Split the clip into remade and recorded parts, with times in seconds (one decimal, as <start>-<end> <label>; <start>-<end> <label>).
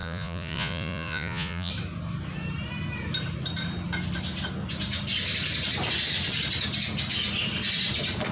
0.0-1.7 remade; 1.7-8.3 recorded